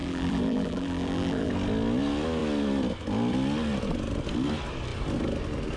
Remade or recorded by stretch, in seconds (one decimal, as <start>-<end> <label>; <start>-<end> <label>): 0.0-1.5 remade; 1.5-5.8 recorded